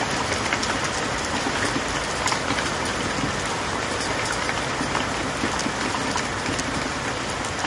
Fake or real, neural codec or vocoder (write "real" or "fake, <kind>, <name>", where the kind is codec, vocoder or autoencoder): real